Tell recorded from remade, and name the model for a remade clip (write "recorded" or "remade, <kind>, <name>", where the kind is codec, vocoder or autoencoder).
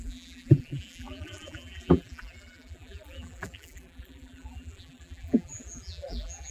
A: remade, vocoder, BigVGAN v2